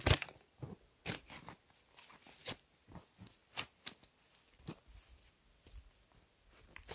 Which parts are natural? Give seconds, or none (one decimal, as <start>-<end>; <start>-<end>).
0.0-6.9